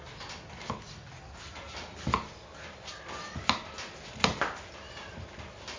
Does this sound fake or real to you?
real